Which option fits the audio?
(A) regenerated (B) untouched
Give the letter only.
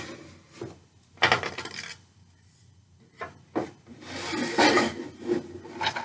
B